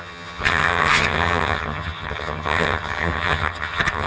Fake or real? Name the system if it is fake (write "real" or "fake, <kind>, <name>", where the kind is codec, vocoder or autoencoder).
fake, vocoder, HiFi-GAN